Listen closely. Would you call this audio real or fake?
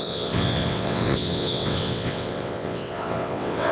fake